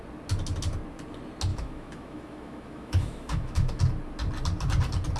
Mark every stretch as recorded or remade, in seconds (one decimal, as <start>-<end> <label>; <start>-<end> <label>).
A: 0.0-1.5 recorded; 1.5-3.8 remade; 3.8-5.2 recorded